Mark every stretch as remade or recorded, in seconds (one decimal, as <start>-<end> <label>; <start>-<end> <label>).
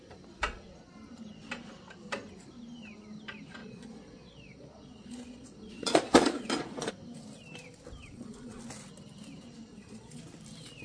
0.0-3.6 recorded; 3.6-6.9 remade; 6.9-8.0 recorded; 8.0-8.6 remade; 8.6-9.7 recorded; 9.7-10.2 remade; 10.2-10.8 recorded